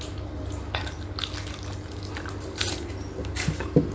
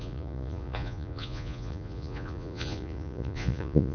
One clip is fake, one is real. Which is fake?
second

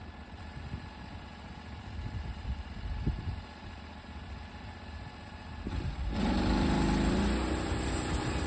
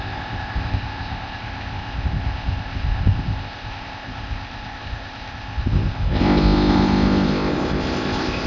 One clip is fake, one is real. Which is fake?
second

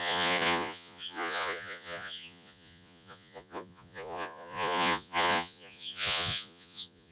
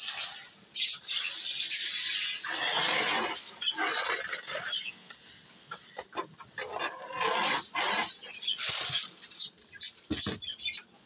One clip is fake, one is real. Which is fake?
first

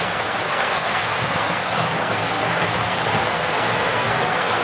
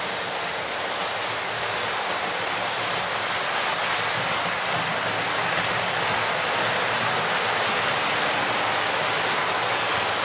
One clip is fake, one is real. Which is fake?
first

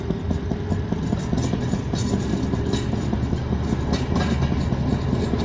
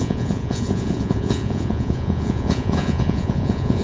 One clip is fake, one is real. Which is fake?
second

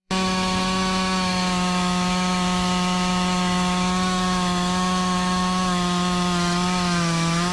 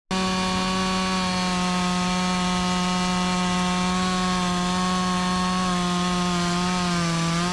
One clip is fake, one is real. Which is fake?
first